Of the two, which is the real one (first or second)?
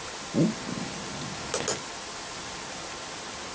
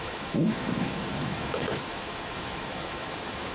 first